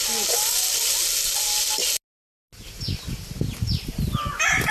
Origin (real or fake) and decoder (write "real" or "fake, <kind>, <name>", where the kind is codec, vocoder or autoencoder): real